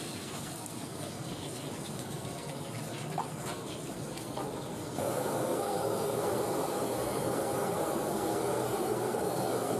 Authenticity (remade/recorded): remade